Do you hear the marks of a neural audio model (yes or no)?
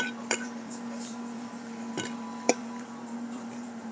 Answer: yes